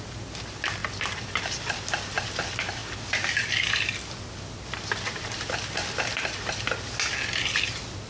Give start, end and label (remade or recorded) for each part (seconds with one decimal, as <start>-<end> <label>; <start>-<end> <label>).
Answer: 0.0-8.1 recorded